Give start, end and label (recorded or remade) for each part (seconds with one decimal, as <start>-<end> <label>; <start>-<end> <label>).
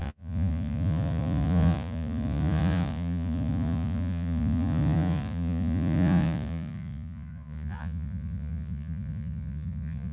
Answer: 0.0-10.1 remade